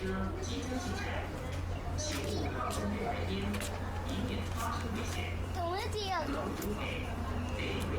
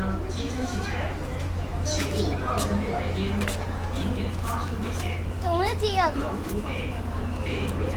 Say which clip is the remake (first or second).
second